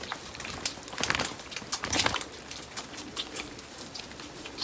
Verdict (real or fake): real